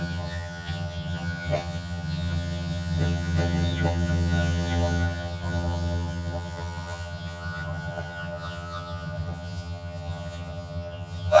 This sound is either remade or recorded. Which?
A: remade